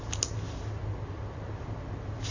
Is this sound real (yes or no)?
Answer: yes